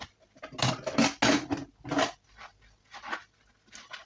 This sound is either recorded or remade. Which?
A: recorded